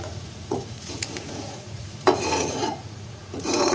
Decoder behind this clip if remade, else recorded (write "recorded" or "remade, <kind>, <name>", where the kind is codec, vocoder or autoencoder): remade, vocoder, Vocos